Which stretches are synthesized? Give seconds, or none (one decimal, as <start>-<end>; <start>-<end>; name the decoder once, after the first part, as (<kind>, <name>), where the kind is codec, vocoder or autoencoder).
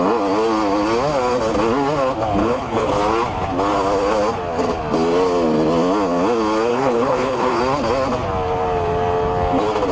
2.4-2.9 (codec, HILCodec); 6.7-7.6